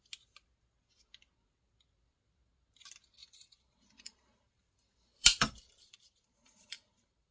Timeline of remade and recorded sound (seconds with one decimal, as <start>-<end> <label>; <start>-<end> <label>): 0.0-3.2 recorded; 3.2-7.3 remade